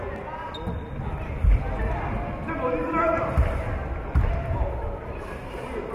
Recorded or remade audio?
recorded